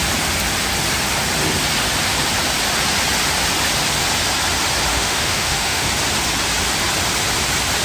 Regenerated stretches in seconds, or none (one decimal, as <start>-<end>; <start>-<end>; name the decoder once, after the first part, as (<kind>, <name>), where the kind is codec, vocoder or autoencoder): 4.9-5.9 (autoencoder, DAC-VAE)